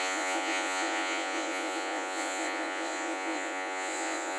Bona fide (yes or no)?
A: no